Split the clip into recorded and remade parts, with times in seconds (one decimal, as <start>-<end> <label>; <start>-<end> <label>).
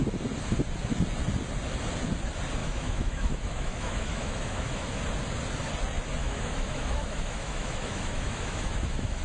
0.0-2.6 recorded; 2.6-5.0 remade; 5.0-6.2 recorded; 6.2-9.2 remade